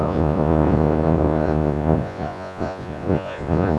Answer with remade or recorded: remade